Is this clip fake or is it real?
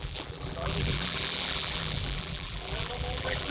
fake